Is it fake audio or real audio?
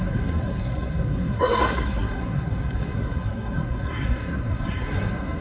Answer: fake